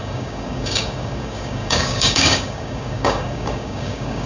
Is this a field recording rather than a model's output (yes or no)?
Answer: no